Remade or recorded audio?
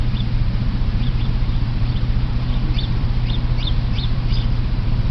remade